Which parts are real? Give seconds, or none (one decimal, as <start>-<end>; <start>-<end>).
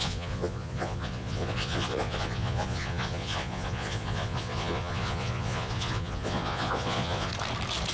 7.3-7.9